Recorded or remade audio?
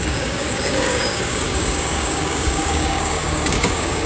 remade